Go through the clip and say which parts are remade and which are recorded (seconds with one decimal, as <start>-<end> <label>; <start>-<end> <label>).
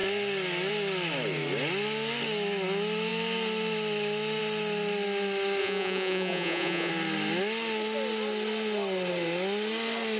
0.0-5.6 recorded; 5.6-6.9 remade; 6.9-10.2 recorded